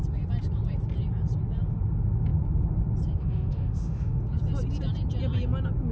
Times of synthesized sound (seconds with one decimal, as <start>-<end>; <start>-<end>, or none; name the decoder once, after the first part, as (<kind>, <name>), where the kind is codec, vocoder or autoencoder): 3.2-4.2 (autoencoder, DAC-VAE)